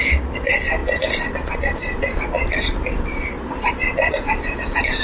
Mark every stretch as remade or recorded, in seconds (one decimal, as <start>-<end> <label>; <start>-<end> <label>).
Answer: 0.0-5.0 recorded